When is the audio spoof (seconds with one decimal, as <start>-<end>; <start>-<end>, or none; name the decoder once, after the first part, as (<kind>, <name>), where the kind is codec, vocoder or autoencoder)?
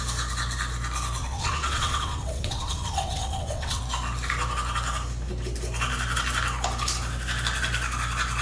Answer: 1.2-3.8 (vocoder, WaveNeXt)